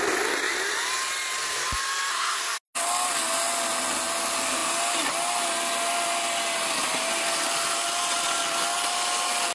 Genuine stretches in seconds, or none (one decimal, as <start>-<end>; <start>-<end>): 0.0-2.1; 2.6-9.5